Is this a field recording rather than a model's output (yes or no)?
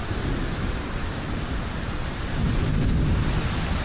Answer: no